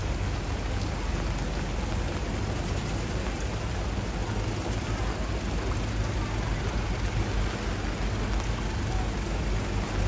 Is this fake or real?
real